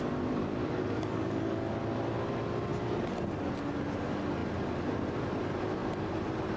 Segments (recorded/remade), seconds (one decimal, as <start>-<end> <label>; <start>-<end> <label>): 0.0-0.6 recorded; 0.6-1.7 remade; 1.7-6.6 recorded